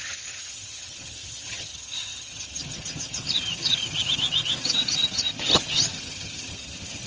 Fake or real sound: fake